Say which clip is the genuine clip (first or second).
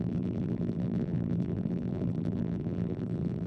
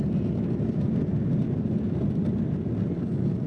second